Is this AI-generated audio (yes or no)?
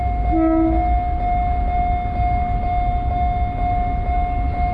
no